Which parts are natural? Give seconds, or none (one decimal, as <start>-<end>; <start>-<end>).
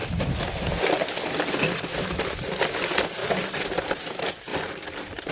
0.0-0.8; 3.2-3.8